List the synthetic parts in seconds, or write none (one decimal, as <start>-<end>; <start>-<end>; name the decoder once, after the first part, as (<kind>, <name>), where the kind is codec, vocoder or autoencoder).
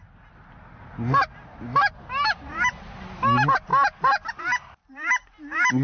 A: none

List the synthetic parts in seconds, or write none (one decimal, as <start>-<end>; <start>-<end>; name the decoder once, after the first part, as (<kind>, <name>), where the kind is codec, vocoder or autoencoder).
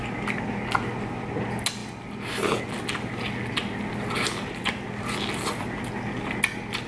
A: none